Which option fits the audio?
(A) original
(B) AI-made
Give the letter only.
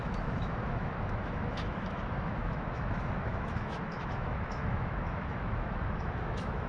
B